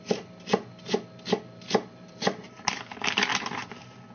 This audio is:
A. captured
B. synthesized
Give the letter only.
A